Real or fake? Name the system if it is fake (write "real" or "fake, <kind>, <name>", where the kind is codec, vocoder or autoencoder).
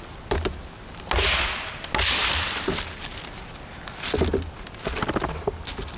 real